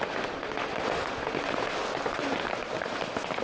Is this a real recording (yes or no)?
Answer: yes